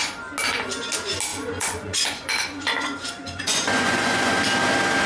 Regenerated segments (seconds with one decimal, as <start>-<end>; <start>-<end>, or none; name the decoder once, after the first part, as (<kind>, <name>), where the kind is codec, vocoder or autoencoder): 1.3-4.4 (vocoder, Vocos)